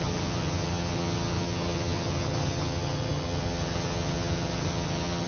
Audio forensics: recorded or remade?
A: remade